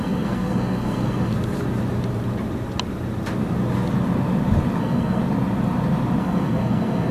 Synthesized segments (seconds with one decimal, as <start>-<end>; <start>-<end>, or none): 0.0-1.3; 4.8-5.2; 6.2-7.1